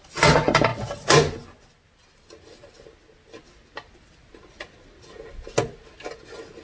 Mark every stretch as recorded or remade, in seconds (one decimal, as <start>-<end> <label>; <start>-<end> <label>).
0.0-6.6 recorded